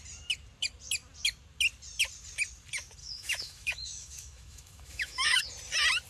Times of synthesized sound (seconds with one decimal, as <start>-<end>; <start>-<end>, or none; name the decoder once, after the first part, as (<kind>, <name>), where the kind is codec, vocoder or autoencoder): 3.0-5.4 (autoencoder, DAC-VAE)